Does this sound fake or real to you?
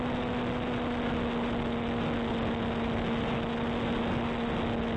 real